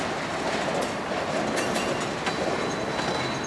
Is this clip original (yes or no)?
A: yes